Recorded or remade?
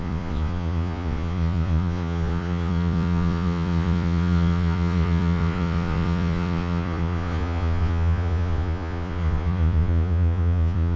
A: remade